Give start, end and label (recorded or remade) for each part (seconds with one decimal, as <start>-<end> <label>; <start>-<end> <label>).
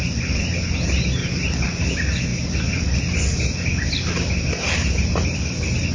0.0-5.9 recorded